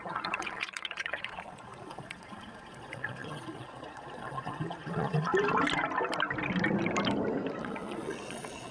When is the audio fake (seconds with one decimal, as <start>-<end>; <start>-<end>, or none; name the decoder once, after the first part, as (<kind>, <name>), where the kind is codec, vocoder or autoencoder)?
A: 0.0-5.3 (vocoder, Vocos); 7.6-8.7

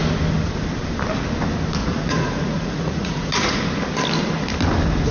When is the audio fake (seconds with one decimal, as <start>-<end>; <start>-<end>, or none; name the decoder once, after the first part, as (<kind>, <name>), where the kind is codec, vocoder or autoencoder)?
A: 1.8-3.6 (vocoder, Vocos)

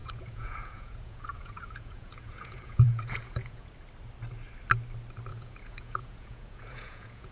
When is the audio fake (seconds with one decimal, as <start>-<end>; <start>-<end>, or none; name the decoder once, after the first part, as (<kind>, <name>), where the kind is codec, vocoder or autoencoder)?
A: 0.0-3.7 (vocoder, Vocos); 5.3-7.3